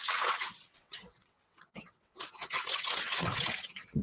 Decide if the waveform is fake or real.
fake